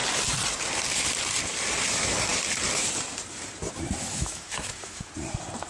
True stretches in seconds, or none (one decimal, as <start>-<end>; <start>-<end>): 0.0-4.0; 5.1-5.7